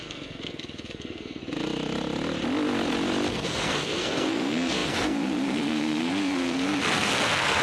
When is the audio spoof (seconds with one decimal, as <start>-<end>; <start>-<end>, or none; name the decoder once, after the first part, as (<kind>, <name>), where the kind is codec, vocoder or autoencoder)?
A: 0.0-1.4 (codec, SNAC); 3.3-7.6